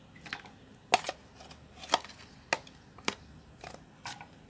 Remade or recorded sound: recorded